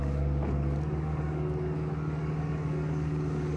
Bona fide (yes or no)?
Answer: no